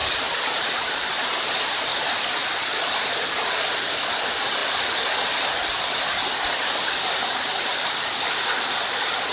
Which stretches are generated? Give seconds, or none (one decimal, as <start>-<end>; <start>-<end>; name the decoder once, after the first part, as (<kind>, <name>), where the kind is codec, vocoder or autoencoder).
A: 0.0-2.5 (vocoder, BigVGAN v2)

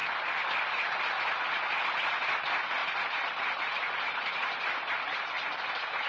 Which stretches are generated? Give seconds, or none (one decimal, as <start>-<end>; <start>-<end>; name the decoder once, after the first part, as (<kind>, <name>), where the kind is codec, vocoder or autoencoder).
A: 0.0-1.2 (vocoder, BigVGAN v2); 2.8-5.6

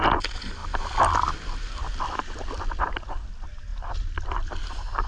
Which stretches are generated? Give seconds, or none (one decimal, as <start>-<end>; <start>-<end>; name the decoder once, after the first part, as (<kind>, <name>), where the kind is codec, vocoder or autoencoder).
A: none

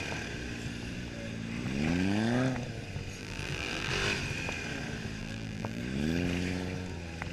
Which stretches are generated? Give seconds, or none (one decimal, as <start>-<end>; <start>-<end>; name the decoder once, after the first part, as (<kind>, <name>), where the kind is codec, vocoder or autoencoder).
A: 3.2-3.9 (vocoder, BigVGAN v2); 5.2-5.8